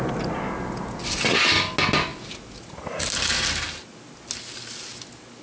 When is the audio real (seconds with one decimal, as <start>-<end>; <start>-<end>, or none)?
0.0-5.4